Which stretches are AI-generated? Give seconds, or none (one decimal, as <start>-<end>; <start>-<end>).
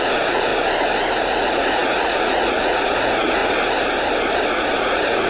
0.0-0.5; 1.2-3.4; 4.5-5.3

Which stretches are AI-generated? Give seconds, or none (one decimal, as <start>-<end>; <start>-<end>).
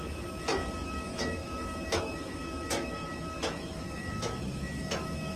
0.0-5.4